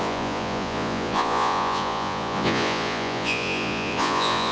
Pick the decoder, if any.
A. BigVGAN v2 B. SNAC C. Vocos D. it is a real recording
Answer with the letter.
C